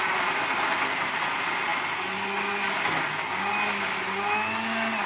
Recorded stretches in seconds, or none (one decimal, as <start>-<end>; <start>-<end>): 0.0-5.1